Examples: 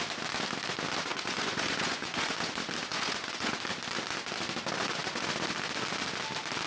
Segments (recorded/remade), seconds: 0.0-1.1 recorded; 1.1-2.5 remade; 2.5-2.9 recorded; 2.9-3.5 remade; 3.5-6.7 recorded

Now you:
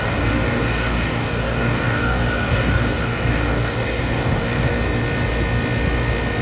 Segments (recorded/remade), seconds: 0.0-4.7 remade; 4.7-6.4 recorded

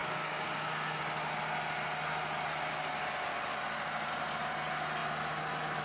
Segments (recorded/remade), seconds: 0.0-1.0 remade; 1.0-5.8 recorded

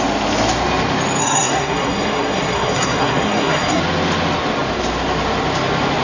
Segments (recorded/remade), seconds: 0.0-1.2 recorded; 1.2-3.8 remade; 3.8-6.0 recorded

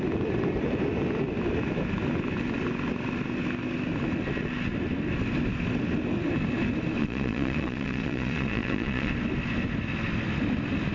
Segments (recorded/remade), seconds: 0.0-7.0 recorded; 7.0-9.1 remade; 9.1-10.9 recorded

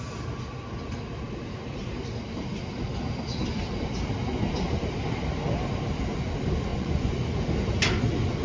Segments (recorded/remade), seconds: 0.0-6.7 recorded; 6.7-7.4 remade; 7.4-8.4 recorded

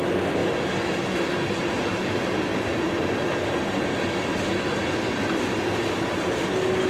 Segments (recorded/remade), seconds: 0.0-6.9 recorded

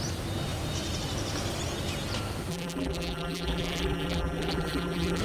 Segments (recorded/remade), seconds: 0.0-2.5 recorded; 2.5-5.2 remade